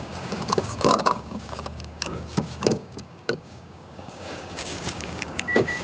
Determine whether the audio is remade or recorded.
remade